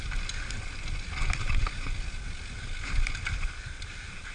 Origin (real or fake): real